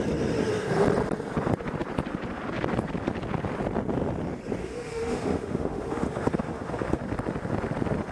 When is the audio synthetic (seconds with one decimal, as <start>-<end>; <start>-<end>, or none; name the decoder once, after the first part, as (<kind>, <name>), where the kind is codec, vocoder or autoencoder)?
4.6-7.0 (autoencoder, DAC-VAE)